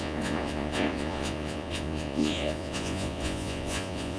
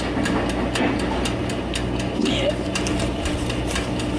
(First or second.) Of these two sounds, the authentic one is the second